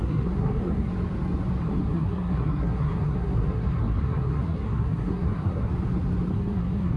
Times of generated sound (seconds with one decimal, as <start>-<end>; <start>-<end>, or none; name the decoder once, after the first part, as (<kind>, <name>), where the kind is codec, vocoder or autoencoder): 0.0-0.9 (codec, SNAC); 1.6-5.7; 6.3-7.0